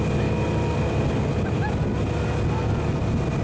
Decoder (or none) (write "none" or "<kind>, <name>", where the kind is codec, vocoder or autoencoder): none